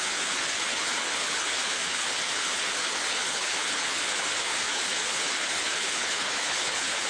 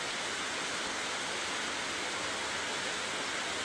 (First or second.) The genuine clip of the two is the second